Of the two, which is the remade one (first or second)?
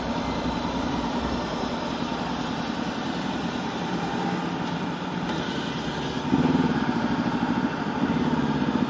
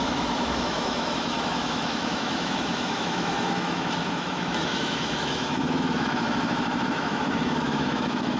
second